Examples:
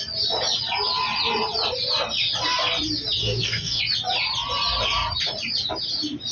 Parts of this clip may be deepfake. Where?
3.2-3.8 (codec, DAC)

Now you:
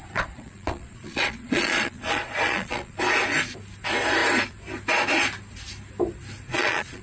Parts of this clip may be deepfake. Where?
0.0-3.0 (vocoder, Vocos); 6.5-7.0

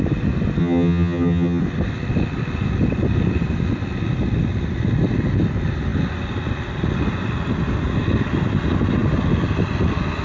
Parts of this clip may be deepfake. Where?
0.6-1.6 (vocoder, HiFi-GAN)

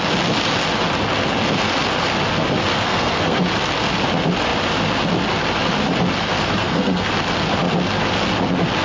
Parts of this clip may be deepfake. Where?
2.7-3.4 (codec, SNAC); 6.6-7.1

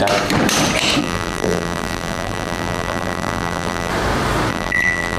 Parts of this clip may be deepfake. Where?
1.0-3.9 (vocoder, BigVGAN v2); 4.5-5.2